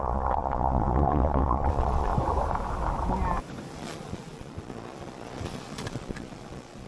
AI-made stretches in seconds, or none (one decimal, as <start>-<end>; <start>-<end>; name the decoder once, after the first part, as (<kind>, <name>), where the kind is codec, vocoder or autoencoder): 0.0-2.1 (vocoder, Vocos); 3.7-6.9